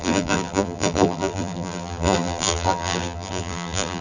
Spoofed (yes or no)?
yes